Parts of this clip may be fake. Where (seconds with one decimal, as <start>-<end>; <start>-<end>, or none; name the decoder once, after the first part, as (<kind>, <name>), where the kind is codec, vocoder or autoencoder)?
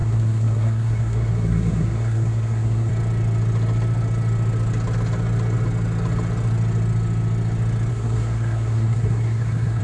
0.0-2.9 (codec, SNAC); 7.9-9.8